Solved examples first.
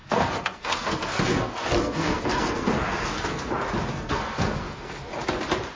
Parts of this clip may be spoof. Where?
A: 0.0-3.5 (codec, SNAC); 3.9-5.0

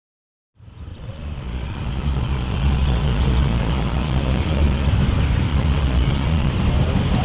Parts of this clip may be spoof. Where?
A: 0.9-4.9 (vocoder, Vocos); 5.5-6.5

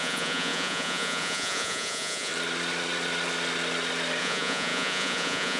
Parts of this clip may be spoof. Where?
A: 0.0-2.3 (vocoder, Vocos); 4.2-5.6

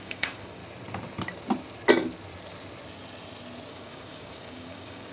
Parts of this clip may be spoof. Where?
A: 0.0-0.6 (codec, DAC); 3.7-5.1

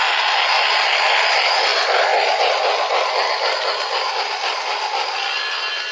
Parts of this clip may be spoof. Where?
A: none